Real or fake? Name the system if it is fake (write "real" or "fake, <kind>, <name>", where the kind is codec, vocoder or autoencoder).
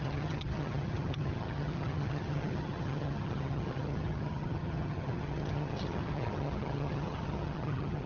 fake, vocoder, HiFi-GAN